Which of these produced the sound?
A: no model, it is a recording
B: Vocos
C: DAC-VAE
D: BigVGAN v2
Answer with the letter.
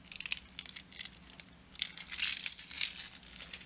A